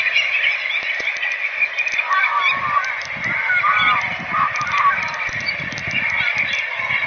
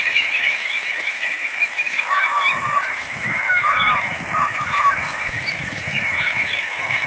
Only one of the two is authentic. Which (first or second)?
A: first